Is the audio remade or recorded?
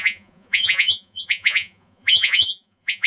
remade